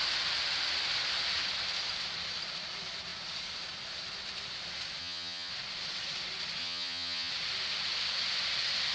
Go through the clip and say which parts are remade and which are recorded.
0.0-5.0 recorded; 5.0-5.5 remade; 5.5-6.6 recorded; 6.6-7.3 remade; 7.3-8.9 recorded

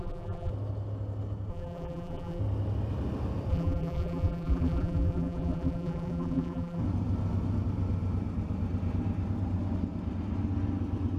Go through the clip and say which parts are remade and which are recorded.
0.0-0.5 remade; 0.5-1.5 recorded; 1.5-2.4 remade; 2.4-3.5 recorded; 3.5-6.8 remade; 6.8-11.2 recorded

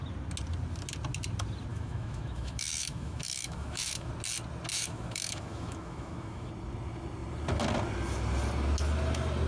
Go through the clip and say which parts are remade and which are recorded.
0.0-1.7 recorded; 1.7-4.1 remade; 4.1-4.7 recorded; 4.7-6.5 remade; 6.5-9.5 recorded

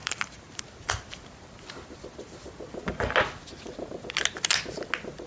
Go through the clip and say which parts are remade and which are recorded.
0.0-0.6 remade; 0.6-5.3 recorded

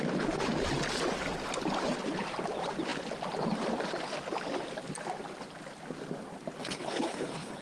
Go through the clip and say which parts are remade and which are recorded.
0.0-6.6 recorded; 6.6-7.6 remade

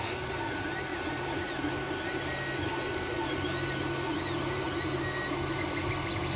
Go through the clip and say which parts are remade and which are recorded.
0.0-6.4 recorded

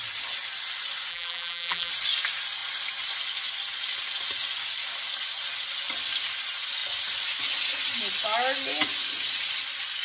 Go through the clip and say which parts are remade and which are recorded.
0.0-1.1 recorded; 1.1-1.9 remade; 1.9-10.0 recorded